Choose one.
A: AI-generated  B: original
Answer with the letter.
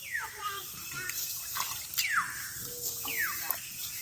B